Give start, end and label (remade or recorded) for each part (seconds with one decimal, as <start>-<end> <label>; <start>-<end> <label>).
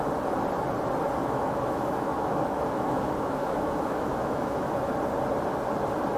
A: 0.0-1.2 recorded; 1.2-4.9 remade; 4.9-6.2 recorded